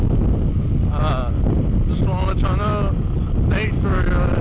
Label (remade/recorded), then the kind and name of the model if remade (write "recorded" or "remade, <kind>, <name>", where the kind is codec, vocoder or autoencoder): recorded